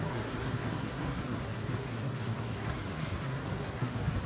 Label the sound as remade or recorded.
remade